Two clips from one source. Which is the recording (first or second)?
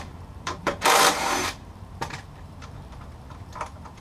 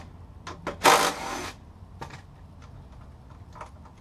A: second